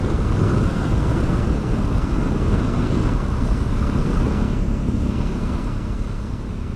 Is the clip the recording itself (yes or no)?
no